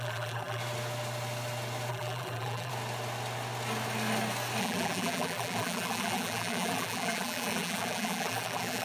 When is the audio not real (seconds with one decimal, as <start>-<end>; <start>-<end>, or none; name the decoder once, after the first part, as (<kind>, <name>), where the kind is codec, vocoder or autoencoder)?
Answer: 0.0-0.6 (vocoder, BigVGAN v2); 1.9-2.7; 4.6-8.8